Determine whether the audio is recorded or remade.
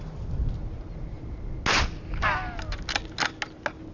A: recorded